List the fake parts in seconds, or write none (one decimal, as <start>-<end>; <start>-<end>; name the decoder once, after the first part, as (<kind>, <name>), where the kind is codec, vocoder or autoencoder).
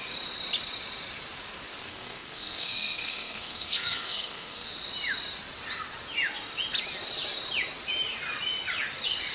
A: 1.8-4.7 (codec, SNAC)